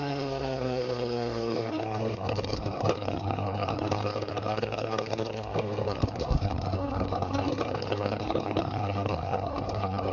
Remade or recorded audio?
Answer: remade